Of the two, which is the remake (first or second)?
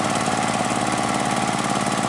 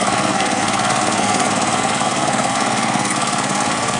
second